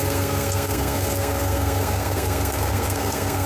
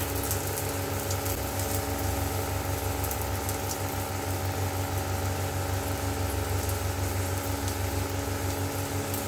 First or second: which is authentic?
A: second